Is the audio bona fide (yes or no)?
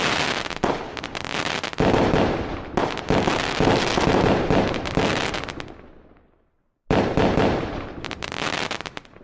yes